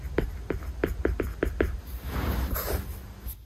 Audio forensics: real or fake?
real